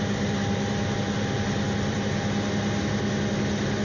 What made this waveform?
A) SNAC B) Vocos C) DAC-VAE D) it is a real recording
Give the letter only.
D